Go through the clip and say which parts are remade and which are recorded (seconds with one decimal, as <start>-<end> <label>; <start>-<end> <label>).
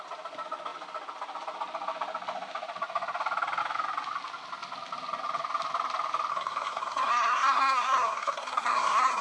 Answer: 0.0-6.3 recorded; 6.3-9.2 remade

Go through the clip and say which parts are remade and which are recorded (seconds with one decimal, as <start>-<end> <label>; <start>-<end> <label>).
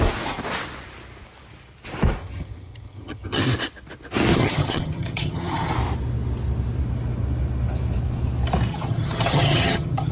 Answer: 0.0-2.2 recorded; 2.2-3.4 remade; 3.4-4.3 recorded; 4.3-5.7 remade; 5.7-8.7 recorded; 8.7-10.1 remade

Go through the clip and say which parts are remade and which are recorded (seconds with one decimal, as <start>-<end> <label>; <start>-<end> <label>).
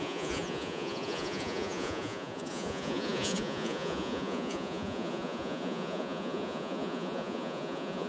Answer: 0.0-8.1 remade